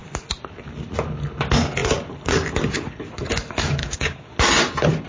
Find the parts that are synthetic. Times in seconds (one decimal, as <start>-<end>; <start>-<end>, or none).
3.8-4.3